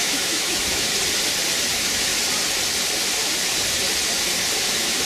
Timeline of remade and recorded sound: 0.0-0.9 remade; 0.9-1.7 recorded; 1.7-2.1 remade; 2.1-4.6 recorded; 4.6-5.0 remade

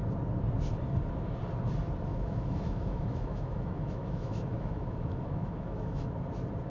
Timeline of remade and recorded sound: 0.0-2.1 recorded; 2.1-6.1 remade; 6.1-6.7 recorded